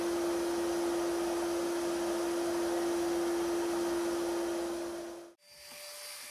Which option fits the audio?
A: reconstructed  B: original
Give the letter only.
B